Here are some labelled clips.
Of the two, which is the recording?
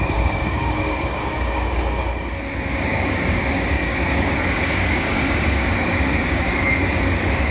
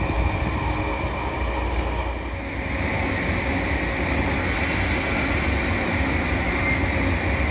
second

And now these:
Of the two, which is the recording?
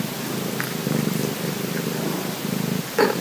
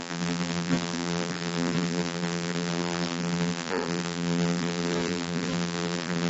first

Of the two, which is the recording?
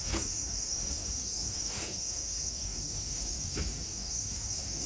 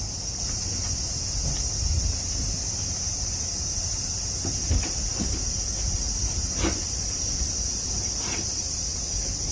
second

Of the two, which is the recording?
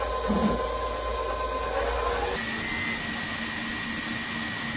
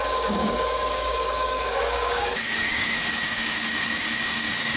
first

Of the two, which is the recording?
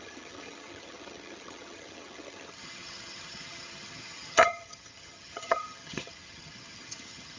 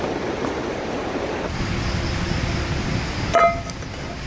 second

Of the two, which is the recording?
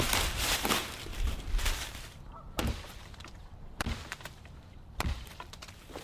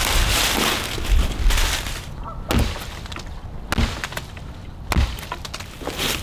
second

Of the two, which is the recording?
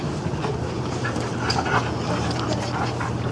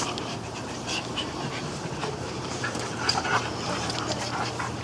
first